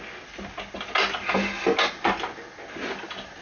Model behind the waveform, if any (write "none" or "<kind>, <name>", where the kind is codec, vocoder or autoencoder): none